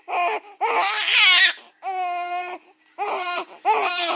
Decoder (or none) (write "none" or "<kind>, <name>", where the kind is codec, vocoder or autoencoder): none